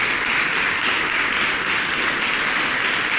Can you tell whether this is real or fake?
real